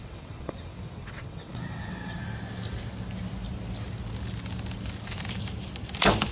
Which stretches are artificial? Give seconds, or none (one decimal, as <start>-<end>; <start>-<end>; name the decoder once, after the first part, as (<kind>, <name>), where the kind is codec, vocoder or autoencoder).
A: 0.0-2.2 (vocoder, WaveNeXt)